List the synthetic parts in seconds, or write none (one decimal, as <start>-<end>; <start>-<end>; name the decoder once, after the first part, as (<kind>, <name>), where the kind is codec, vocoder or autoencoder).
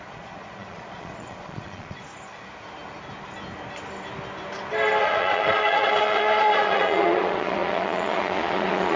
0.0-2.1 (vocoder, Vocos); 5.0-9.0